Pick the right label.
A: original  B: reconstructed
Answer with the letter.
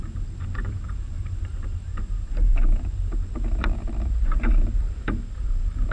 B